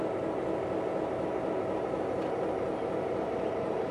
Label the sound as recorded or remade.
recorded